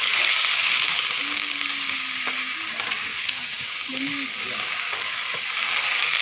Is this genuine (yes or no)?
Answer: no